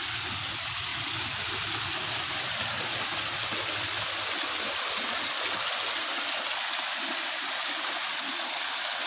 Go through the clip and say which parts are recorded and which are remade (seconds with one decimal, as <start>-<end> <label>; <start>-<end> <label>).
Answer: 0.0-0.9 recorded; 0.9-2.3 remade; 2.3-9.1 recorded